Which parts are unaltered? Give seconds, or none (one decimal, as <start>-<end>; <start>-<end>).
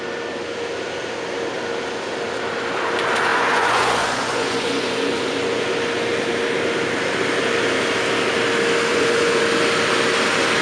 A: 0.0-3.3; 5.7-8.9; 9.4-10.6